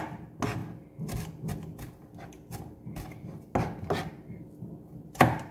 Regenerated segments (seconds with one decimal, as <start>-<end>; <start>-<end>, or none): none